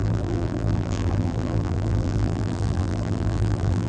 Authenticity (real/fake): fake